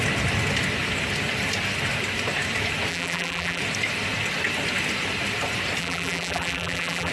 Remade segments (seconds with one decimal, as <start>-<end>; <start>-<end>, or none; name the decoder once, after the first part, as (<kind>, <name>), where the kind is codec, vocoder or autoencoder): 2.9-3.6 (vocoder, BigVGAN v2); 5.8-7.1

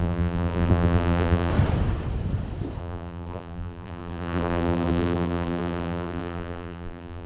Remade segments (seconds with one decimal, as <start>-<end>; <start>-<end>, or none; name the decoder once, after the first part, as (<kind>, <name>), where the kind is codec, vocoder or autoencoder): 0.0-1.5 (vocoder, BigVGAN v2); 2.8-7.3